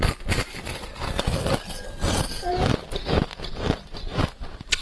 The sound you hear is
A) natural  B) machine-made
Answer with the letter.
A